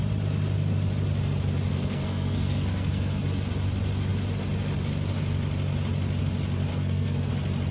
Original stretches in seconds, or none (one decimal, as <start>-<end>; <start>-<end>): 0.0-1.7; 3.2-6.7; 7.3-7.7